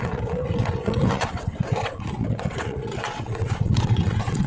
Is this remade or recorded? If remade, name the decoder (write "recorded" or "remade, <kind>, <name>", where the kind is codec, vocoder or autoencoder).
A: remade, vocoder, WaveNeXt